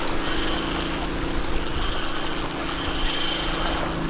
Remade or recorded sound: recorded